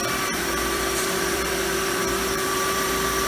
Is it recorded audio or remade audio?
remade